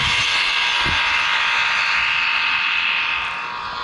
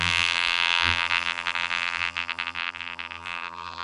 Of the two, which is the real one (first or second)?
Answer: first